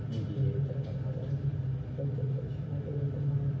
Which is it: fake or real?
real